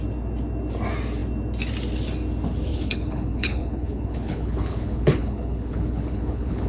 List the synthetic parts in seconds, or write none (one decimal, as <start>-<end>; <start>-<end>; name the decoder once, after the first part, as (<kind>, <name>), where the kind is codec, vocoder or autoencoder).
2.7-6.7 (codec, HILCodec)